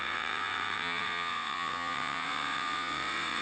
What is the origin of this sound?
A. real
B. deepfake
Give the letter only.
B